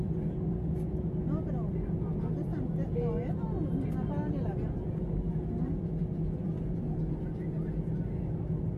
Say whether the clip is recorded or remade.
recorded